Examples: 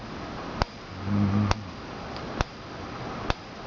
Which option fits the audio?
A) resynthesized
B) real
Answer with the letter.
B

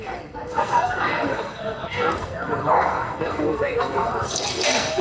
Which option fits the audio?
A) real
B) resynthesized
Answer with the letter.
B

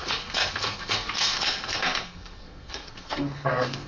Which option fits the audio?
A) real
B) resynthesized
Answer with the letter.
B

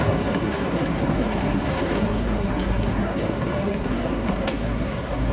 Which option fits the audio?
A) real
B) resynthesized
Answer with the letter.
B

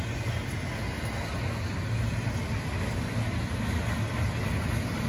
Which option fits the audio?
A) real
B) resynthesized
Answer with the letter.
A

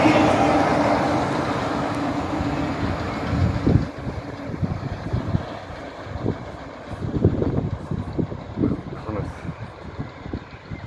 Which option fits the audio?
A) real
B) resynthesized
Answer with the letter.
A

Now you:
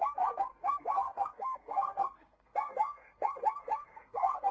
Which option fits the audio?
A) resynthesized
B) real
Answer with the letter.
A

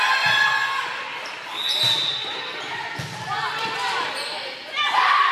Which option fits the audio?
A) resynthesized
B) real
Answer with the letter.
B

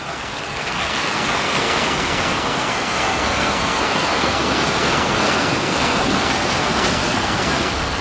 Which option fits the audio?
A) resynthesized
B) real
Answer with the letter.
A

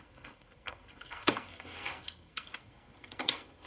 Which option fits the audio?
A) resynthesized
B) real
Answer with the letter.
A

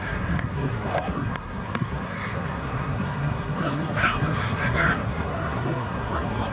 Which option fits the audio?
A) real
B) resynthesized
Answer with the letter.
B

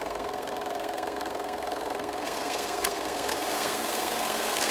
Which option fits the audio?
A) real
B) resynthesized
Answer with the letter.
B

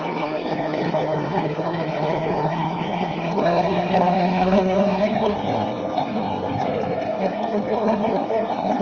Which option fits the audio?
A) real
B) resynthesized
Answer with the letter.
B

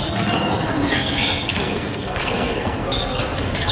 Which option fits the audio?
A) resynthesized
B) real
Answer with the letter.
A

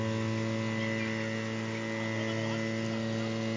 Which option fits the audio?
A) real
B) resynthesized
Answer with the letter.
A